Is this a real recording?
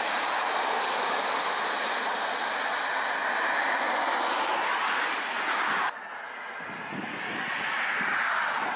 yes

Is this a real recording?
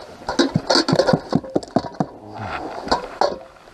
yes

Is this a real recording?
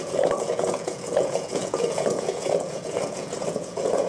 no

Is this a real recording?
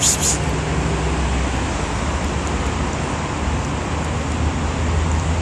yes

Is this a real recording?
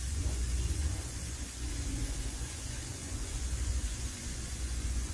no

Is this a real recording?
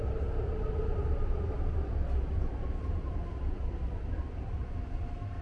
yes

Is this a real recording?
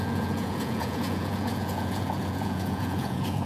no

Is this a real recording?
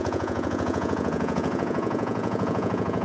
no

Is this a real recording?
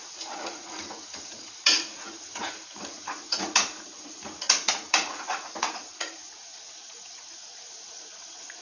no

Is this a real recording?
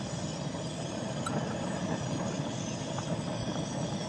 yes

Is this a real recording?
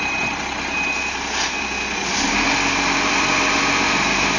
yes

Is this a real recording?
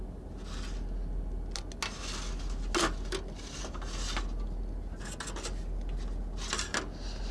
yes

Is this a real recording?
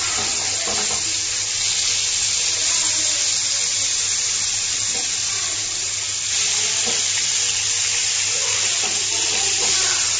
yes